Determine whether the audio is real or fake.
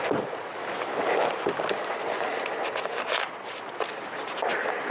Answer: real